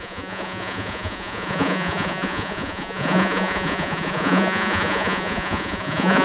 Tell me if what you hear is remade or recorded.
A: remade